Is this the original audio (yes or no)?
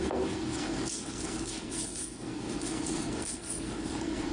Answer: no